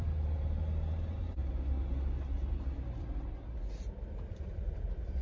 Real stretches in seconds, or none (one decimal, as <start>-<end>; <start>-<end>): 1.4-3.7